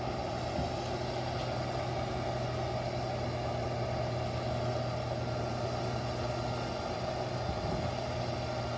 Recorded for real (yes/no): yes